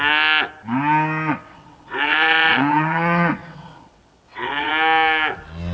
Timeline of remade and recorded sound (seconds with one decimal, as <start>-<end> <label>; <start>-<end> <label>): 0.0-1.3 recorded; 1.3-4.7 remade; 4.7-5.7 recorded